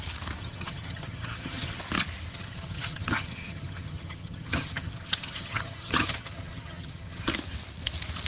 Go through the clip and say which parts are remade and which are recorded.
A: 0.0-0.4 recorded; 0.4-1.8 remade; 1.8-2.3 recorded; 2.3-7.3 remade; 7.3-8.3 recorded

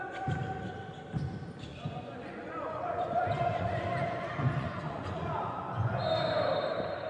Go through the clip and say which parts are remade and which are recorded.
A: 0.0-1.7 recorded; 1.7-6.0 remade; 6.0-7.1 recorded

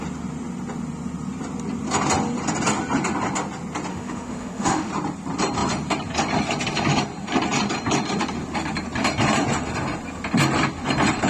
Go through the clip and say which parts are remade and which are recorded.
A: 0.0-3.9 recorded; 3.9-4.9 remade; 4.9-11.3 recorded

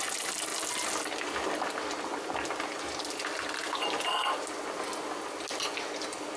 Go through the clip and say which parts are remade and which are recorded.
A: 0.0-6.4 recorded

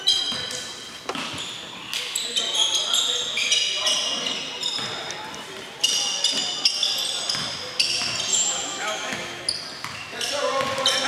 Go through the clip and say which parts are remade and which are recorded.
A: 0.0-8.3 recorded; 8.3-9.4 remade; 9.4-11.1 recorded

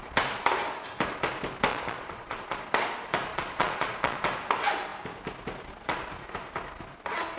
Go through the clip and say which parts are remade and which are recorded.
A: 0.0-1.7 recorded; 1.7-2.6 remade; 2.6-3.3 recorded; 3.3-4.2 remade; 4.2-7.4 recorded

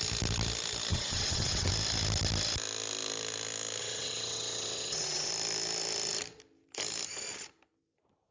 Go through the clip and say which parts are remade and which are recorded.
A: 0.0-0.9 recorded; 0.9-1.7 remade; 1.7-3.8 recorded; 3.8-5.3 remade; 5.3-8.3 recorded

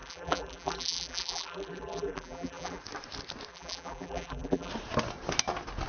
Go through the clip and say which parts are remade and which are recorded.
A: 0.0-2.8 remade; 2.8-3.5 recorded; 3.5-4.7 remade; 4.7-5.9 recorded